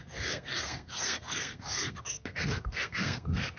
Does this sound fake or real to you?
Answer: fake